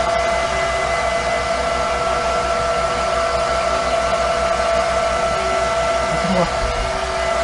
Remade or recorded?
recorded